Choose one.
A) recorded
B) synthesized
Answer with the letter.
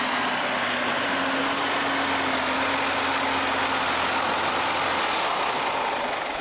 A